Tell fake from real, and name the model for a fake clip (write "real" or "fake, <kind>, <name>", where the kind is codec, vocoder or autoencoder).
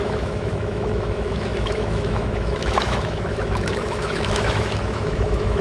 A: fake, autoencoder, DAC-VAE